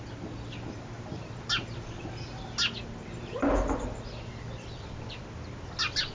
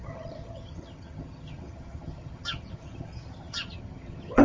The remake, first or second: second